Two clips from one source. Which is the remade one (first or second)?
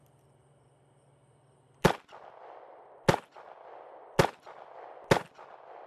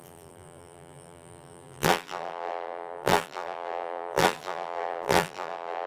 second